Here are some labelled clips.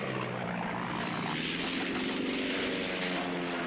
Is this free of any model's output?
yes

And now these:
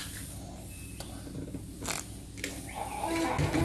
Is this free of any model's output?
yes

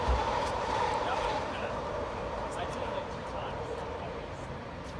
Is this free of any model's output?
no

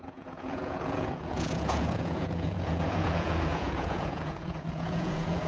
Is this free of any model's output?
no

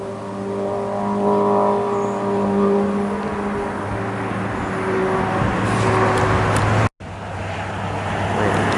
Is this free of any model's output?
yes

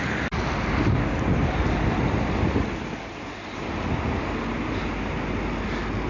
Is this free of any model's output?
yes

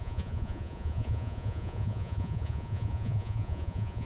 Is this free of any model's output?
no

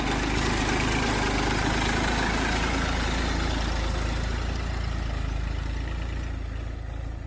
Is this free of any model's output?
yes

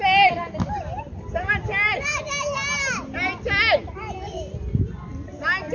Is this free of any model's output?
yes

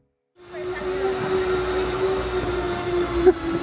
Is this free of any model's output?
yes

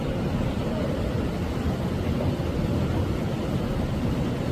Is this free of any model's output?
yes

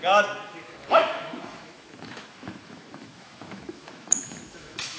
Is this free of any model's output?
no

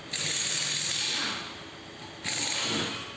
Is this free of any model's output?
yes